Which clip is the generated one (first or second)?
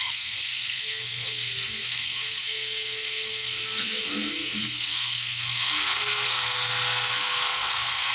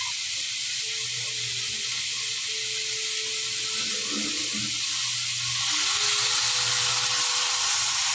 first